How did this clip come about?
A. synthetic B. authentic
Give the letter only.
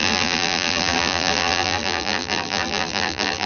A